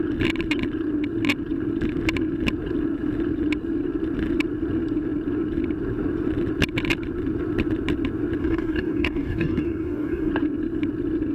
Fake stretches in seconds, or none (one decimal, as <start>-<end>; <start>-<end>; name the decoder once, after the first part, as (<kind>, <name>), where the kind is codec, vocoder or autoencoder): 8.4-10.3 (codec, DAC)